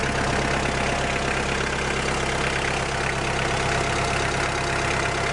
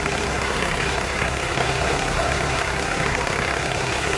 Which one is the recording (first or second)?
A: first